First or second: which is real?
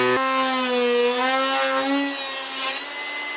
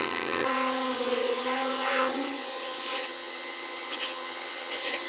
first